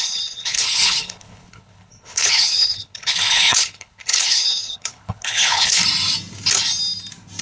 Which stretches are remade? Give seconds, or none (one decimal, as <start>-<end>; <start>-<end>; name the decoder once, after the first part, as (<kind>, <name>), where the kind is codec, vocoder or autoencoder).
0.0-5.8 (codec, HILCodec)